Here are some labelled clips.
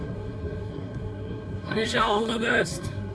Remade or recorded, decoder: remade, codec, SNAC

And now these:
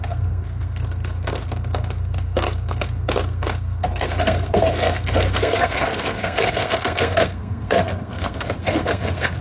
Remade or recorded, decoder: remade, codec, SNAC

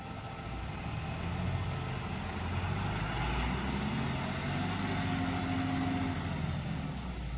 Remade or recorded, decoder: recorded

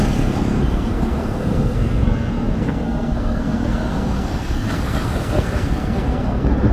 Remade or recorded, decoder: remade, codec, SNAC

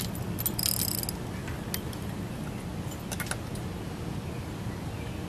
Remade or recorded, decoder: recorded